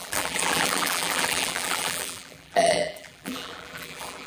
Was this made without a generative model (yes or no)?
no